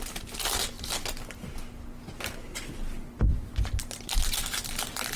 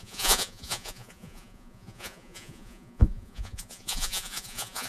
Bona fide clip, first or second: first